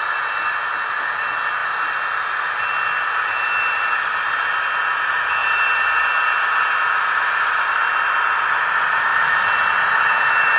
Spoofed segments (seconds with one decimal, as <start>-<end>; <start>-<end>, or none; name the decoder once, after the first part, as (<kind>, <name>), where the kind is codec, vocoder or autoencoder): none